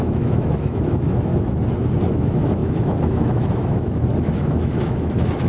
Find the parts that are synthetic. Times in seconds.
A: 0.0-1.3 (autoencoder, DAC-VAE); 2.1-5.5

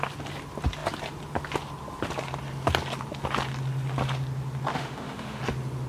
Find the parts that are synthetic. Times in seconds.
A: 4.7-5.4 (autoencoder, DAC-VAE)

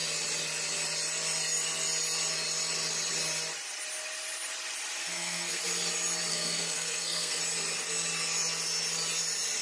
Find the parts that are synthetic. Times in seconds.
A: 5.0-5.6 (codec, SNAC); 6.3-7.4